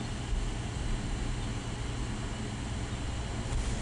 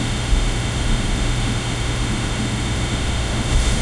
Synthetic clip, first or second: second